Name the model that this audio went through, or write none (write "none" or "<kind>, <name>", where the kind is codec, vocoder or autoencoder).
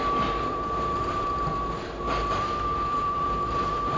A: none